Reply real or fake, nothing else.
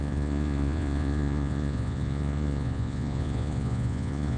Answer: fake